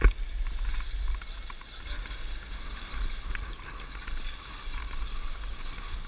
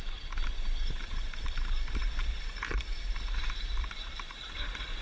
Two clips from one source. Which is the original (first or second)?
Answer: first